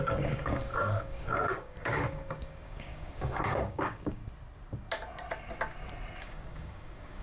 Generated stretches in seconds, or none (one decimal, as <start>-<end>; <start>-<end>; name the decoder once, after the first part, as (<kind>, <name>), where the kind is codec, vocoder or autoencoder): 0.0-4.2 (codec, DAC); 6.2-7.2